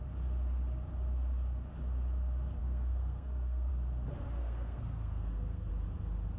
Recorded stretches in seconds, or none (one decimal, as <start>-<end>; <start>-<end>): 0.0-2.6; 3.7-4.4; 5.7-6.4